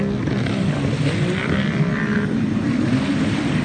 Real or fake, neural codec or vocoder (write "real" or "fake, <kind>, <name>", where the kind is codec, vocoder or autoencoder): real